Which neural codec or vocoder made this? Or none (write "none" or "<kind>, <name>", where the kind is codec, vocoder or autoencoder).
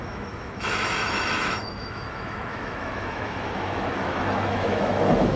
autoencoder, DAC-VAE